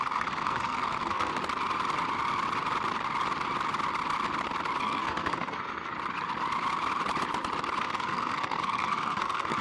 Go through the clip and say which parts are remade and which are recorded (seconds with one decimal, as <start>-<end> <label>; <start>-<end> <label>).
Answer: 0.0-1.3 remade; 1.3-4.8 recorded; 4.8-5.9 remade; 5.9-7.8 recorded; 7.8-9.6 remade